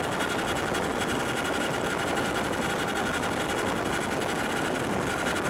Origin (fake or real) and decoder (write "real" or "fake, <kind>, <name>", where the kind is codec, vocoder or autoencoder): real